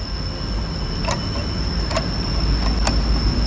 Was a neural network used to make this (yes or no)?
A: no